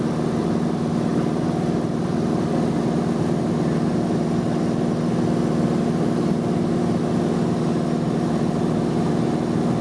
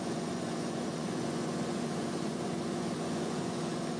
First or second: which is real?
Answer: first